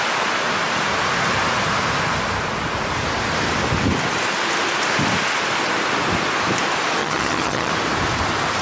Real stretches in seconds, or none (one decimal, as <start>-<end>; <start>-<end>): 0.0-7.0; 7.7-8.6